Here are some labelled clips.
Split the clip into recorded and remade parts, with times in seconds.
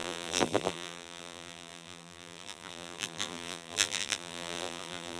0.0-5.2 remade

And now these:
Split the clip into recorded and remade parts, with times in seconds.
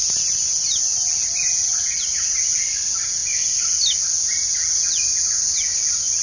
0.0-6.2 recorded